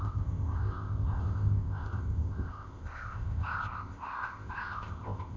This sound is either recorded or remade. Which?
remade